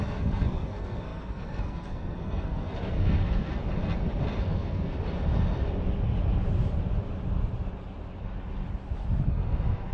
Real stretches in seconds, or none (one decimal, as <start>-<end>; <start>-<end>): 3.6-4.4; 4.9-9.3